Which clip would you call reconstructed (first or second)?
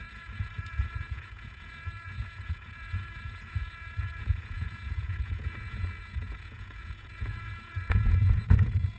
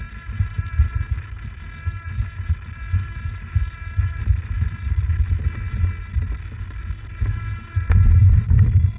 first